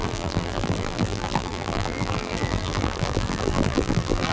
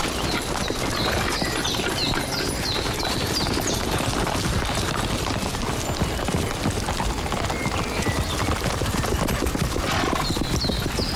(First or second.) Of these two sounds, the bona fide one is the second